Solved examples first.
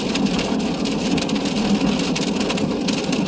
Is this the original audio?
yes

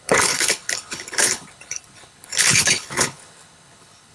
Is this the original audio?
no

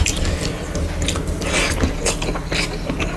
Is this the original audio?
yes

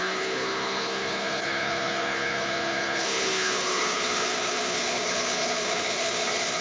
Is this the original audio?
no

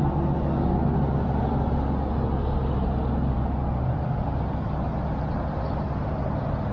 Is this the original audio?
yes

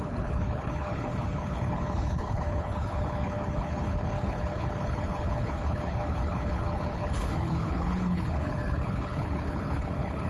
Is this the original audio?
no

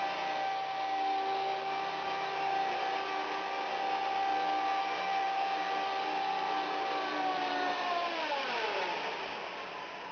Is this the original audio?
yes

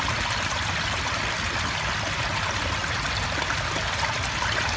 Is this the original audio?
yes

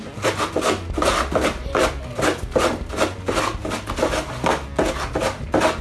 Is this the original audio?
yes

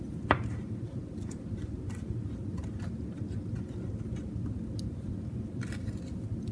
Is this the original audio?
yes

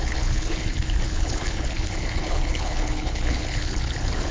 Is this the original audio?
no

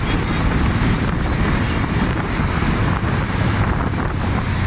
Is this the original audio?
yes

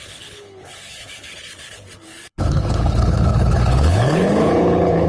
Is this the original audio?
no